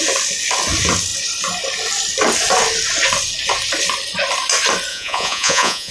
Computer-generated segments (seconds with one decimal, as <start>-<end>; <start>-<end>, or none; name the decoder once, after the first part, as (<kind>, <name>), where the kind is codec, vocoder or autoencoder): 4.9-5.9 (vocoder, Vocos)